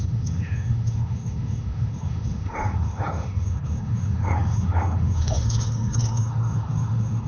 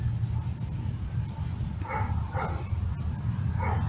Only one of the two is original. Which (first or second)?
second